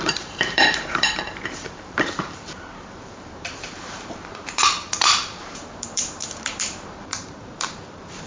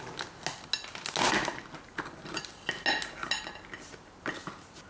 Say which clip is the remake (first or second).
first